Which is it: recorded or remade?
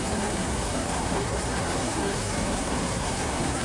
remade